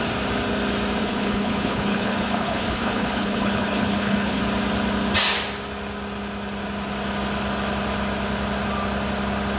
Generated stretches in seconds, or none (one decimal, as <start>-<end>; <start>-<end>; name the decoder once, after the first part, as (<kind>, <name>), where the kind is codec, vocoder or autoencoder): 1.0-4.4 (codec, HILCodec)